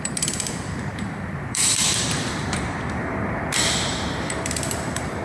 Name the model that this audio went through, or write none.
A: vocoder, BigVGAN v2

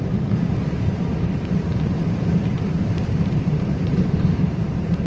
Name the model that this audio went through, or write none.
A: vocoder, BigVGAN v2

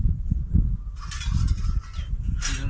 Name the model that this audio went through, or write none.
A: none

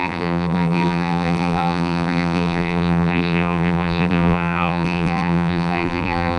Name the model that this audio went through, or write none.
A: vocoder, BigVGAN v2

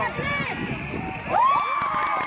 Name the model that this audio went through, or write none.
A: vocoder, BigVGAN v2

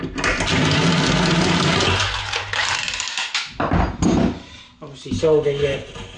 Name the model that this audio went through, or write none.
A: none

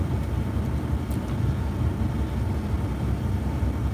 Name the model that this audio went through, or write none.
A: none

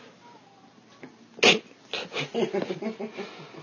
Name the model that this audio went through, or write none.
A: none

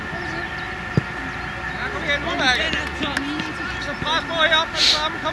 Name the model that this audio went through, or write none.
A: none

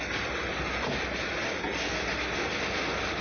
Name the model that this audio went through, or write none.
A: none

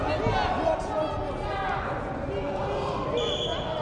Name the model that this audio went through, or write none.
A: none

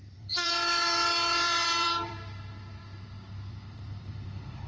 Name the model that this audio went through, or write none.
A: vocoder, BigVGAN v2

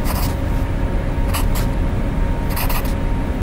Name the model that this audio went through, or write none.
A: none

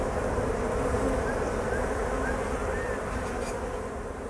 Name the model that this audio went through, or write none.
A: none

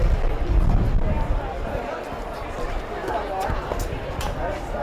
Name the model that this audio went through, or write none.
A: none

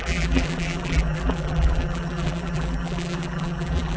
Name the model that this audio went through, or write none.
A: vocoder, BigVGAN v2